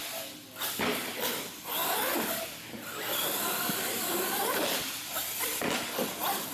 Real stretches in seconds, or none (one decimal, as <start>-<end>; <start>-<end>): 0.0-6.5